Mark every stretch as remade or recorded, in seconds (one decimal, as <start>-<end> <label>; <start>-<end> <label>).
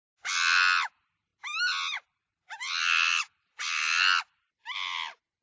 0.0-5.4 recorded